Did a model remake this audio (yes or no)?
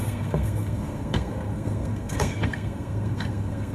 yes